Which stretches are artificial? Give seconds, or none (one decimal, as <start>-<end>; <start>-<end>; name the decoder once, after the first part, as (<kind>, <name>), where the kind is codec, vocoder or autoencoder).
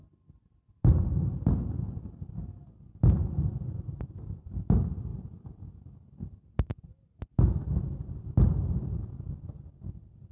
none